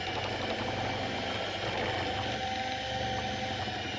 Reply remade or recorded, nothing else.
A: recorded